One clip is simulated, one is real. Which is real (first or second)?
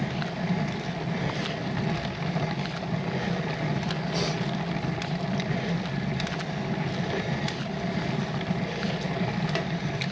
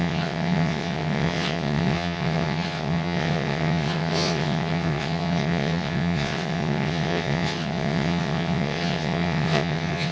first